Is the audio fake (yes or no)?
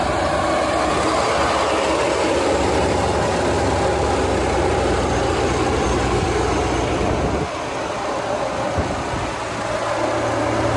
no